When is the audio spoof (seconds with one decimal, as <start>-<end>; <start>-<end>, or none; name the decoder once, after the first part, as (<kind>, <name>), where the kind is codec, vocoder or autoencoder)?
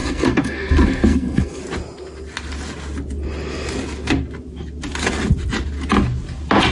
0.0-1.6 (codec, SNAC)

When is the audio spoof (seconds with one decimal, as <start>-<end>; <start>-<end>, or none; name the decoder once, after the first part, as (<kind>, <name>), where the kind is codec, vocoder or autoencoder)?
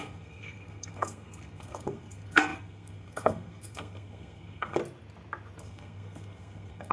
0.0-4.8 (codec, SNAC); 5.6-6.9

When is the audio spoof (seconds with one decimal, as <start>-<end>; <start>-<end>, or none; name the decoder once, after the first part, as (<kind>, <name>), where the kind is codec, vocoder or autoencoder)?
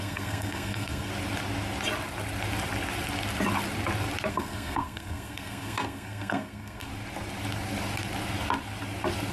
0.0-1.1 (codec, SNAC); 4.3-6.9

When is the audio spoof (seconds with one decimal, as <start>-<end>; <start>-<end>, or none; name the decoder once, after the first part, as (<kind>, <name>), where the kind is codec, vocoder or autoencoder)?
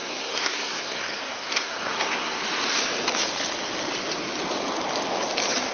0.0-2.4 (codec, SNAC)